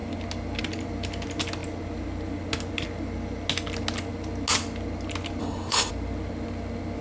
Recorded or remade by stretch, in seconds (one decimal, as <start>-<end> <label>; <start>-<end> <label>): 0.0-5.4 recorded; 5.4-5.9 remade; 5.9-7.0 recorded